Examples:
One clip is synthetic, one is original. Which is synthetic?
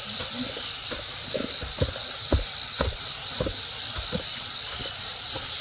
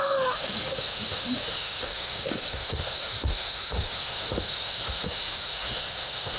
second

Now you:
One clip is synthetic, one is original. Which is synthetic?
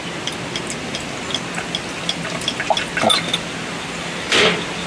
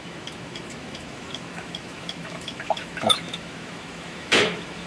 second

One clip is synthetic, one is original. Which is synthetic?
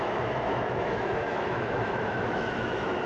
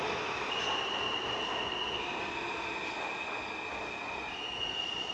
first